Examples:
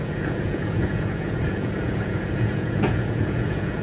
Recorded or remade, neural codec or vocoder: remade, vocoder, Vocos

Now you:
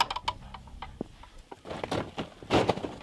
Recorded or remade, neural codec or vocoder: recorded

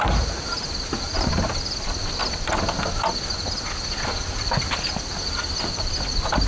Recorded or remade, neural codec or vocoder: recorded